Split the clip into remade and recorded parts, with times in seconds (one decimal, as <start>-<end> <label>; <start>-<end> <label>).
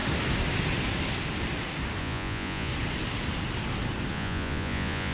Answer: 0.0-2.0 recorded; 2.0-2.7 remade; 2.7-4.1 recorded; 4.1-5.1 remade